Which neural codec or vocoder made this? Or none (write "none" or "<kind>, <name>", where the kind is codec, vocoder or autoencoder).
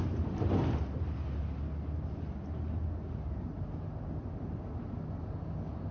none